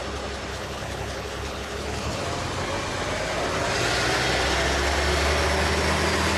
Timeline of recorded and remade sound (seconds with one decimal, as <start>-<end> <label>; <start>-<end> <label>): 0.0-0.5 recorded; 0.5-2.2 remade; 2.2-6.4 recorded

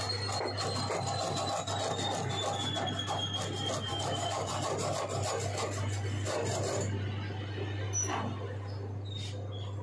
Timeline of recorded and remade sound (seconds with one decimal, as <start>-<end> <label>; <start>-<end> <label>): 0.0-3.9 recorded; 3.9-4.5 remade; 4.5-9.8 recorded

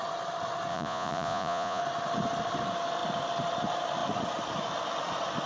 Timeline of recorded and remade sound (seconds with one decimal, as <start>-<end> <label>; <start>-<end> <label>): 0.0-0.7 recorded; 0.7-1.8 remade; 1.8-5.5 recorded

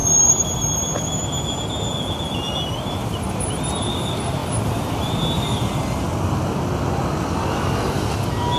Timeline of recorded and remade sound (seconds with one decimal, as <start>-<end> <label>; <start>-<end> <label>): 0.0-1.2 remade; 1.2-3.0 recorded; 3.0-3.5 remade; 3.5-4.4 recorded; 4.4-6.0 remade; 6.0-8.6 recorded

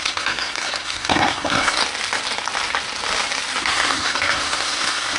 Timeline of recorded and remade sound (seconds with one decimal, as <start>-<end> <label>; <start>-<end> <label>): 0.0-1.8 remade; 1.8-3.6 recorded; 3.6-5.2 remade

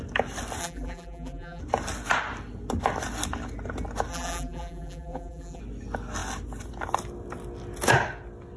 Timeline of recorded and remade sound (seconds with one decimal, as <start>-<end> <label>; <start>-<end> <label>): 0.0-0.6 recorded; 0.6-1.6 remade; 1.6-4.1 recorded; 4.1-5.6 remade; 5.6-8.6 recorded

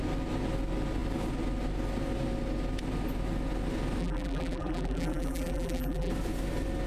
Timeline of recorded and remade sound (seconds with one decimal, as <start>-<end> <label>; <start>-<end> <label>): 0.0-4.0 recorded; 4.0-6.1 remade; 6.1-6.9 recorded

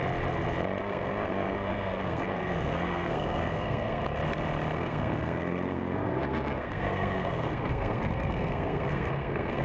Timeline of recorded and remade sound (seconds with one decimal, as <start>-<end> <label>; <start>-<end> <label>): 0.0-0.8 recorded; 0.8-4.0 remade; 4.0-4.7 recorded; 4.7-9.6 remade